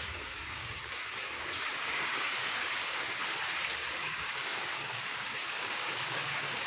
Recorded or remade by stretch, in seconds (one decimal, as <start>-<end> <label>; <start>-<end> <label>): 0.0-3.2 remade; 3.2-3.9 recorded; 3.9-6.7 remade